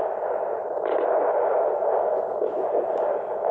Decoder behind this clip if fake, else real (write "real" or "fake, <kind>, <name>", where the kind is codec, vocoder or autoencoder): real